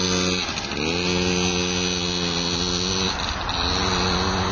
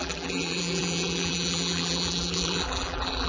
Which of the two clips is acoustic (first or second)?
first